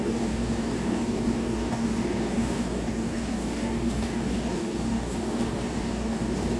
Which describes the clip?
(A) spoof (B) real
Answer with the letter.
A